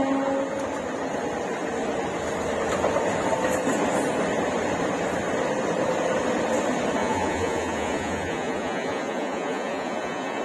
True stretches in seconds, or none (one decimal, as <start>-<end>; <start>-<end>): 0.0-7.0